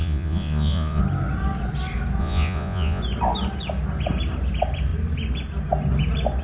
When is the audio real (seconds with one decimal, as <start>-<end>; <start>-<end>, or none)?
1.0-2.2; 3.0-6.4